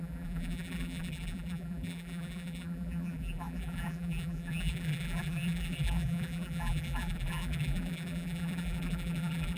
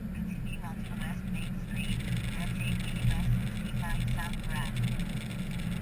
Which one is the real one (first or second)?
second